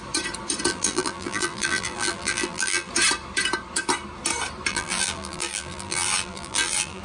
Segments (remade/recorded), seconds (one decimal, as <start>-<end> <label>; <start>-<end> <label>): 0.0-0.7 recorded; 0.7-2.9 remade; 2.9-4.7 recorded; 4.7-7.0 remade